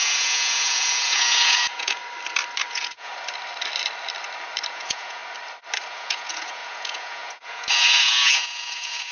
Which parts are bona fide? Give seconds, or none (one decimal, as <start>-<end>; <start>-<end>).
2.0-2.7; 3.1-4.7; 5.2-5.9